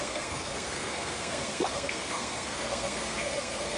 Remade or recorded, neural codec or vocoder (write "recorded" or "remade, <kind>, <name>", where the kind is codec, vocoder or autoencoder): remade, codec, SNAC